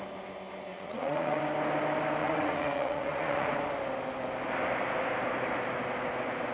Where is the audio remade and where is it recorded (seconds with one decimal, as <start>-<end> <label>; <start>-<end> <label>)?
0.0-0.7 recorded; 0.7-1.4 remade; 1.4-2.2 recorded; 2.2-3.5 remade; 3.5-6.5 recorded